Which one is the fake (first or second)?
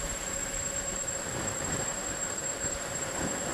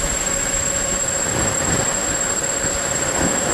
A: first